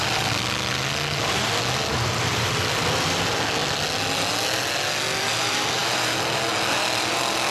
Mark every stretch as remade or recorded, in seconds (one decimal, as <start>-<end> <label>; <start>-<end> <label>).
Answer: 0.0-7.5 recorded